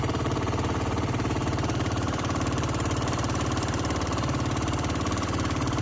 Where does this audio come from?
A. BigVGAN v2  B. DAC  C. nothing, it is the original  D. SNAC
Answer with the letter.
A